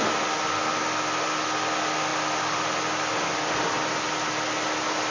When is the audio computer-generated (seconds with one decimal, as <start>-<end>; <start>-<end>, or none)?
none